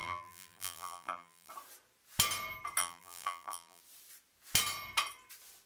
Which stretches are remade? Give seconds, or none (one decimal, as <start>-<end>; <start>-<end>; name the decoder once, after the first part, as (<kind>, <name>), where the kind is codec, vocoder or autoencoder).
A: 0.0-1.5 (vocoder, BigVGAN v2); 2.8-3.8